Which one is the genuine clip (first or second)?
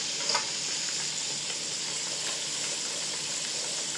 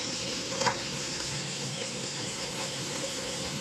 first